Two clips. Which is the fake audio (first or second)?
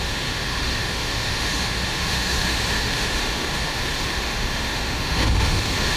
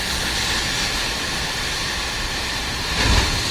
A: first